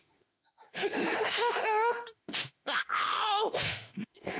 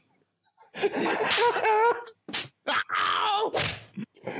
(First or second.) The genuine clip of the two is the second